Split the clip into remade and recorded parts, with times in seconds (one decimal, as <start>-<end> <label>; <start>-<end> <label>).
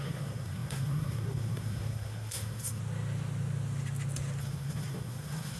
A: 0.0-2.8 remade; 2.8-4.4 recorded; 4.4-5.6 remade